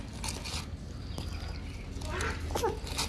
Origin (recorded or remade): recorded